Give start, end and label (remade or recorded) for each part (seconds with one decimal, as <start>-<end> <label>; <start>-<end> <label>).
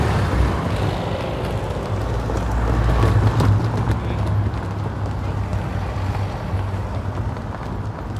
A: 0.0-8.2 recorded